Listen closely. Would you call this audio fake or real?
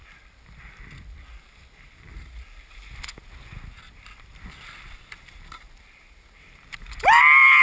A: real